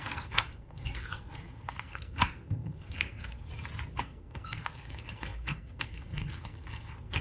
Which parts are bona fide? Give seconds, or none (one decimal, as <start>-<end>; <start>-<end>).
3.5-4.0